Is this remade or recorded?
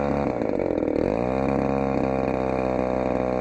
recorded